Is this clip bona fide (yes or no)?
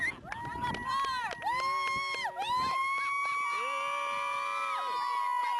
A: yes